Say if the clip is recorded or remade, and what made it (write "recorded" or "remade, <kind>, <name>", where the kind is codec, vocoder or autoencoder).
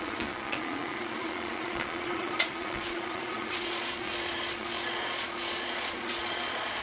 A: remade, vocoder, Vocos